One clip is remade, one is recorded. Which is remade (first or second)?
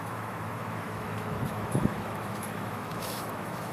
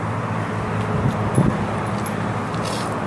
first